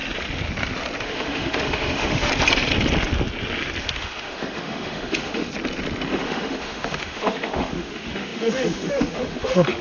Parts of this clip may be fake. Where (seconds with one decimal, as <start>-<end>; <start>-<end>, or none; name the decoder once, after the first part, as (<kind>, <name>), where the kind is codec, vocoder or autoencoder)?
1.0-2.3 (autoencoder, DAC-VAE); 3.8-5.5; 6.1-9.8